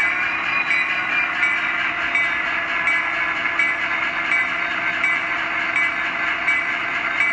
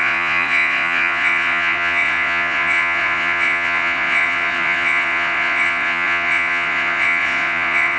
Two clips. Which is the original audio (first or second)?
first